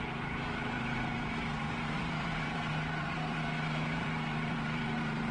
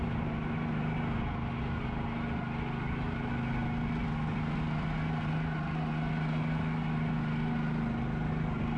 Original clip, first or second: second